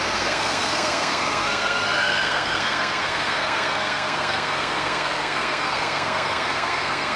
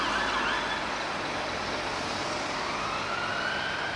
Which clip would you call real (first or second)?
second